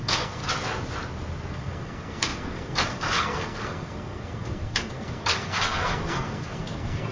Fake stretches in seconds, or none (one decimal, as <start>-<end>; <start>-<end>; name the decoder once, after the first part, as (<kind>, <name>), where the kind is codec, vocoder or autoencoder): 0.0-0.4 (codec, SNAC); 1.5-7.1